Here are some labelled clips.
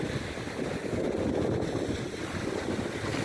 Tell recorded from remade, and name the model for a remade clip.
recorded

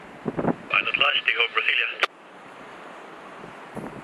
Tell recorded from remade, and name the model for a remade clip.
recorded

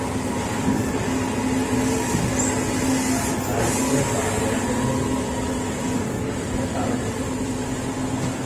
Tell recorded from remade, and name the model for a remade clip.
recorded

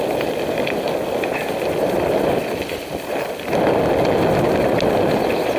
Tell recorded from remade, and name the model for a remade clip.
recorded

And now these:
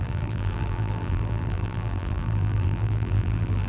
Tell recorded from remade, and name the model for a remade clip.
remade, vocoder, BigVGAN v2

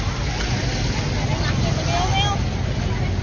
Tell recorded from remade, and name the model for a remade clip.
recorded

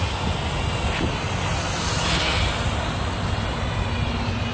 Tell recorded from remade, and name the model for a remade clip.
remade, vocoder, BigVGAN v2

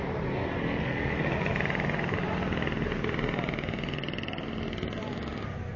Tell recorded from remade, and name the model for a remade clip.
recorded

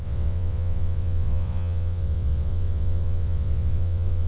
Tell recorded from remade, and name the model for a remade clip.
remade, vocoder, WaveNeXt